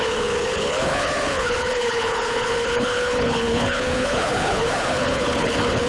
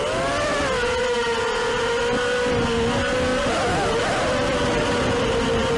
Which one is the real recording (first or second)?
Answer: second